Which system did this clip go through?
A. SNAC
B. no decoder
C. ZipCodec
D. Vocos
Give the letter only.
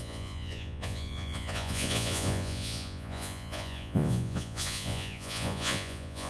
D